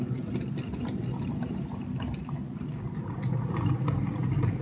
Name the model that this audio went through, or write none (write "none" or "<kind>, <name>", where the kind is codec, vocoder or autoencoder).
none